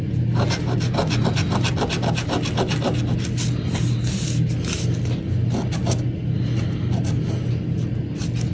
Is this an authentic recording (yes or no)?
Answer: yes